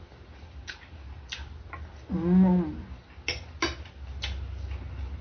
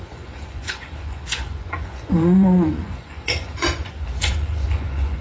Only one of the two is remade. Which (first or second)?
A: second